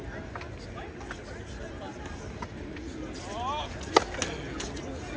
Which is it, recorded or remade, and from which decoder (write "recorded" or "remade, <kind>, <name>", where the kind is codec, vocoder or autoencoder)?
recorded